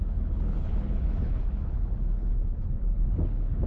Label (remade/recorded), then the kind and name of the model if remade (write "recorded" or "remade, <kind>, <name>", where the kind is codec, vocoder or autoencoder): remade, codec, HILCodec